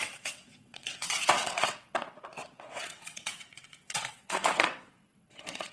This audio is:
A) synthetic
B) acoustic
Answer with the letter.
A